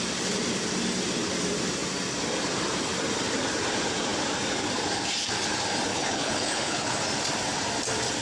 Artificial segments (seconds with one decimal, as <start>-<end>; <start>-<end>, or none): 5.9-7.0